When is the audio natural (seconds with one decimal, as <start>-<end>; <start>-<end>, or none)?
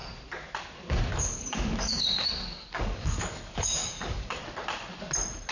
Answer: 0.0-1.1; 4.4-5.5